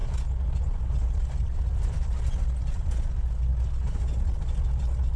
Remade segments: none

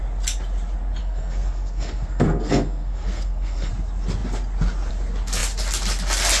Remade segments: 1.0-3.7 (codec, SNAC)

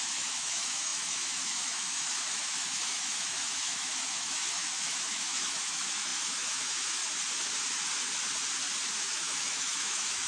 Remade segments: 0.0-7.0 (autoencoder, DAC-VAE); 9.0-10.3

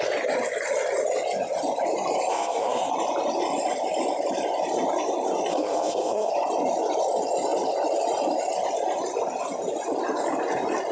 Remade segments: 2.3-2.9 (codec, SNAC); 5.5-6.3

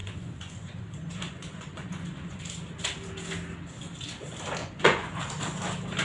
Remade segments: 0.0-2.4 (vocoder, Vocos); 4.6-5.2

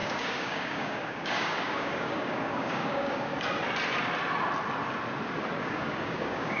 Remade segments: 0.0-3.3 (codec, DAC); 5.6-6.6

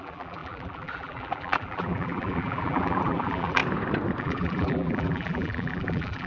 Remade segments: 0.0-3.6 (vocoder, BigVGAN v2); 4.2-6.3

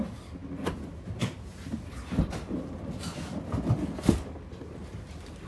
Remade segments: none